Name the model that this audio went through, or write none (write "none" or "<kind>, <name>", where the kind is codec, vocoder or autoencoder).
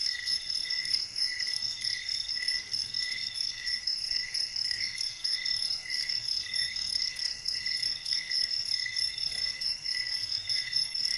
codec, SNAC